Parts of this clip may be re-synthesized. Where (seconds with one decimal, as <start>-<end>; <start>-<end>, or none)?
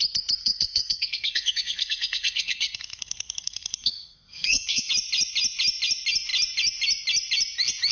0.4-4.9